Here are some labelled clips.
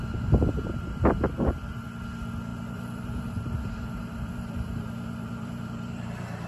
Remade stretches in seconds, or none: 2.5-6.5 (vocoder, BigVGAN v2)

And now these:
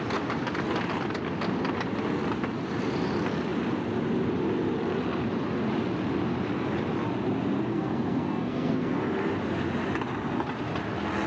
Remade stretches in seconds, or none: 7.7-9.0 (codec, SNAC)

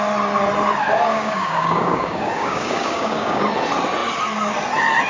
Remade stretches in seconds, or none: 1.1-3.4 (codec, DAC)